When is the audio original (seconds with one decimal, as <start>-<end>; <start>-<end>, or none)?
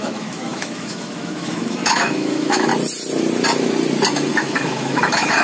2.7-4.3